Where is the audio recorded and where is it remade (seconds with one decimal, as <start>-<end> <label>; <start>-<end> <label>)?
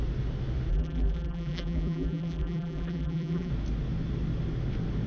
0.0-0.7 recorded; 0.7-3.5 remade; 3.5-5.1 recorded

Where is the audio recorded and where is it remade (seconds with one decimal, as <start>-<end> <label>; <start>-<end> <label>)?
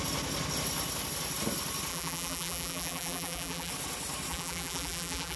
0.0-1.9 recorded; 1.9-3.7 remade; 3.7-4.3 recorded; 4.3-5.4 remade